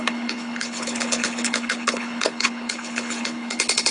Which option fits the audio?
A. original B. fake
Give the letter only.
B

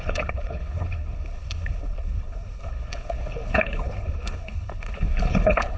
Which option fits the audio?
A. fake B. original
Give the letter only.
A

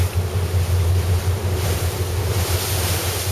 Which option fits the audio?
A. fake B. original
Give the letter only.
B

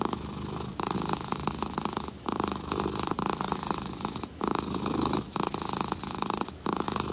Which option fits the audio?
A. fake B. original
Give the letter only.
A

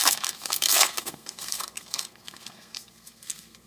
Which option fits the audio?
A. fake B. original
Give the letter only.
A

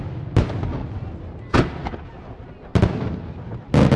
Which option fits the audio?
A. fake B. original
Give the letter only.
B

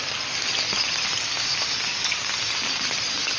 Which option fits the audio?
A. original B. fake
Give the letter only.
A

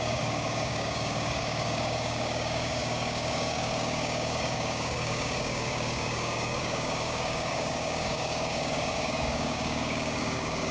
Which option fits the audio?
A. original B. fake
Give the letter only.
B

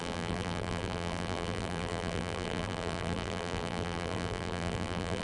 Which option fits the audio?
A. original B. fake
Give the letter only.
B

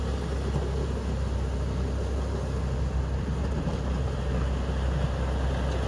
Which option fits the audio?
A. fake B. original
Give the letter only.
B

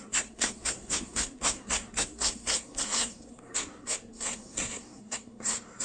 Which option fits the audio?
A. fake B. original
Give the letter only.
A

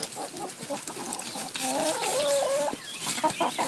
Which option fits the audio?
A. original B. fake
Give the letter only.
A